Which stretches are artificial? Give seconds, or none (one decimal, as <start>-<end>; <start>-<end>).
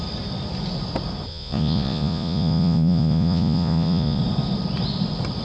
1.3-4.2